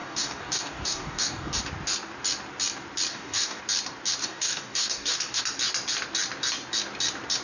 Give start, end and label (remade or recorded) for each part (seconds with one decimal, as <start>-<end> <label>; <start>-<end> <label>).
0.0-1.6 remade; 1.6-3.1 recorded; 3.1-3.6 remade; 3.6-4.2 recorded; 4.2-5.4 remade; 5.4-7.4 recorded